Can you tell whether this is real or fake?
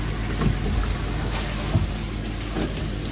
real